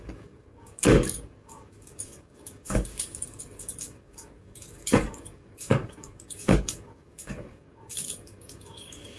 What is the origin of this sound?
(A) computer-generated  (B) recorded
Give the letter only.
A